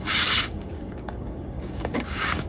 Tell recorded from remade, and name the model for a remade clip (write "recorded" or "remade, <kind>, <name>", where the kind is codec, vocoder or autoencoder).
remade, codec, DAC